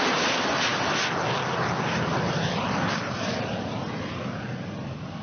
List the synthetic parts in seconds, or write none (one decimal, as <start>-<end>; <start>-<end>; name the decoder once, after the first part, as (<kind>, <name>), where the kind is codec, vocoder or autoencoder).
none